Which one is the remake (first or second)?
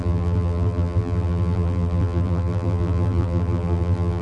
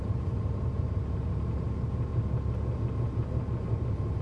first